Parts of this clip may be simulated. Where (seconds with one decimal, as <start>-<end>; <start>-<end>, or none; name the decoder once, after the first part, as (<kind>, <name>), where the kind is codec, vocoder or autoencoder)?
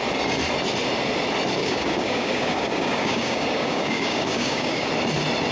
1.6-4.9 (codec, DAC)